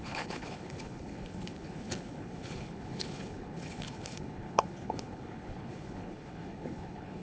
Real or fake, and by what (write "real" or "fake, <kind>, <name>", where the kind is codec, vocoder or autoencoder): fake, codec, HILCodec